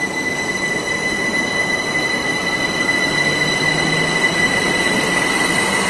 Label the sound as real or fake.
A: real